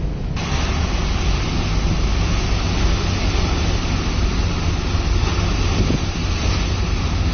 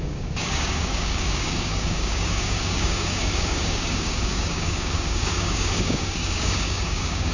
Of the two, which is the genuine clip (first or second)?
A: first